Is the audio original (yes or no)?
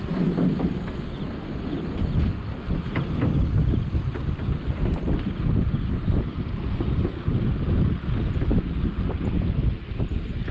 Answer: yes